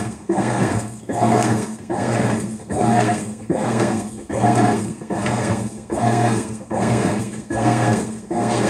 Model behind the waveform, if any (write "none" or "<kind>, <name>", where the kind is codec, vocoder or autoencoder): codec, SNAC